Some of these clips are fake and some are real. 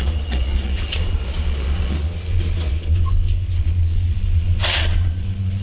fake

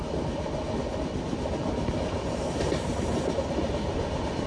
real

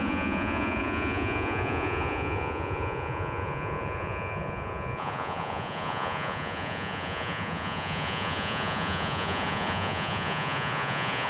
fake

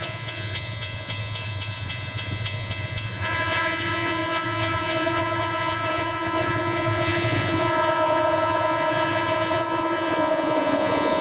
fake